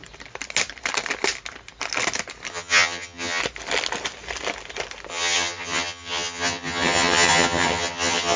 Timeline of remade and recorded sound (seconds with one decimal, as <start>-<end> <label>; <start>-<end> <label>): 0.0-2.5 recorded; 2.5-3.4 remade; 3.4-5.1 recorded; 5.1-8.4 remade